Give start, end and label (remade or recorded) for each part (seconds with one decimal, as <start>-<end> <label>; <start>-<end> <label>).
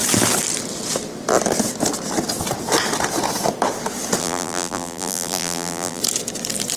0.0-4.2 recorded; 4.2-6.0 remade; 6.0-6.8 recorded